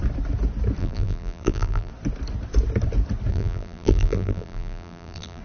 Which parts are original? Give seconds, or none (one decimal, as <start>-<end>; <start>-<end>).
0.0-0.8; 1.9-3.3

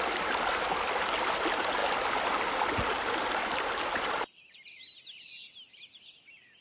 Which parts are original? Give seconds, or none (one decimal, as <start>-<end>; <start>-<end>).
0.0-6.6

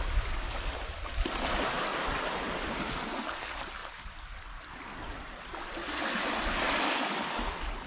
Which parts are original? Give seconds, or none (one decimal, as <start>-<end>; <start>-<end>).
0.0-7.9

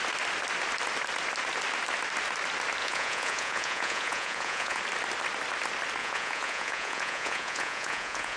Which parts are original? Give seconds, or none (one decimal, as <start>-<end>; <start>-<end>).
0.0-2.8; 4.8-6.0

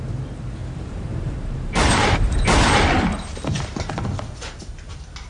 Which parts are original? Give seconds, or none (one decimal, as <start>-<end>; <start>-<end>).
0.0-0.6; 2.2-5.3